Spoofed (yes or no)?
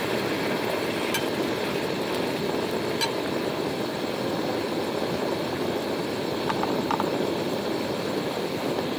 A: no